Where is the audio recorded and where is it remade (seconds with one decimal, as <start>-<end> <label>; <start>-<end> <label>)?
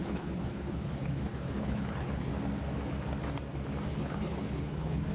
0.0-2.3 remade; 2.3-3.9 recorded; 3.9-5.1 remade